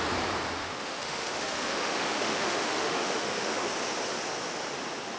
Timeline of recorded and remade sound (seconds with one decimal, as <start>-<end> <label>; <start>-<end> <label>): 0.0-0.6 recorded; 0.6-3.7 remade; 3.7-5.2 recorded